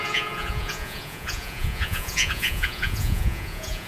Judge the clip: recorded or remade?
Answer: remade